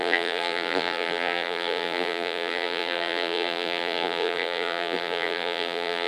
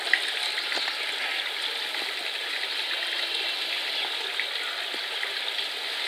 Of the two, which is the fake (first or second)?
first